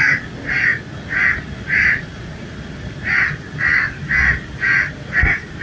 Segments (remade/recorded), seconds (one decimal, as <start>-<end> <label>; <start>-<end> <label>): 0.0-5.6 recorded